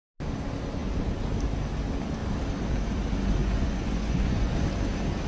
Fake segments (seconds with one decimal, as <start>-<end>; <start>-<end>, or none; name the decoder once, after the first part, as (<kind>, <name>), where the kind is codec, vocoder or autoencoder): 3.4-4.5 (vocoder, Vocos)